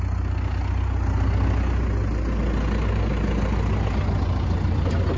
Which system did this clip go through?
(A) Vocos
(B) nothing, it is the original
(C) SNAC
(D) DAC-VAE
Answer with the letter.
B